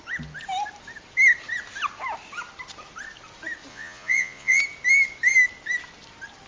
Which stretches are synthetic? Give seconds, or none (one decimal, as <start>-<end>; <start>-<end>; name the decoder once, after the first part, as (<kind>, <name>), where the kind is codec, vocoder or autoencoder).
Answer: 3.7-4.6 (vocoder, Vocos)